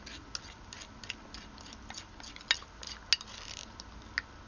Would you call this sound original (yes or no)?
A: yes